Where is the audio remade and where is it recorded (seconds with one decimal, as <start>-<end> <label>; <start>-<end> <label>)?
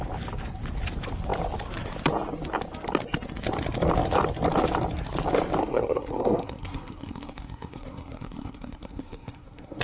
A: 0.0-5.6 recorded; 5.6-9.8 remade